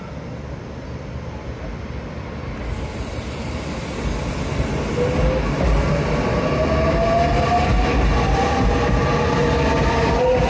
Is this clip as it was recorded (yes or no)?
yes